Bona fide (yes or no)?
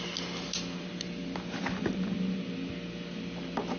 yes